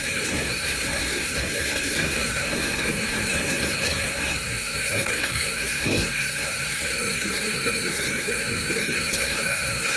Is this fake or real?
fake